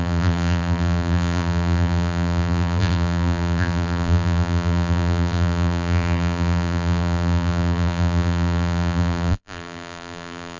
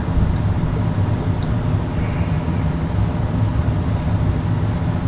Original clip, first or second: second